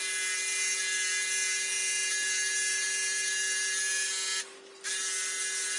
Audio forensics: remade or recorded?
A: recorded